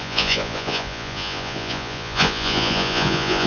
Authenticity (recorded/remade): remade